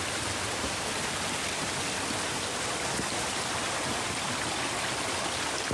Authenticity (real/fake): real